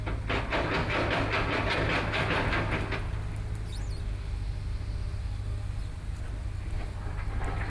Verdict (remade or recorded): recorded